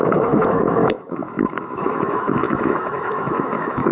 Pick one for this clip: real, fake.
fake